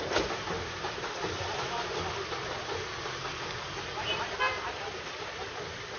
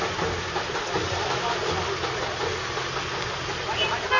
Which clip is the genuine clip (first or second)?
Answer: second